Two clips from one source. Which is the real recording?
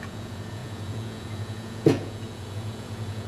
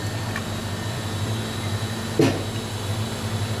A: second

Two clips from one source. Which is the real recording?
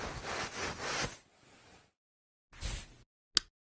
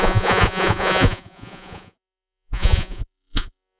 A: first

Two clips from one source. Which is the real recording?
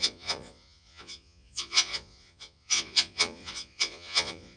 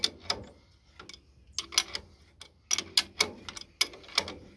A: second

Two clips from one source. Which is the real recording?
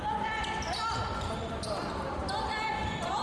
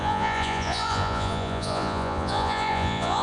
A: first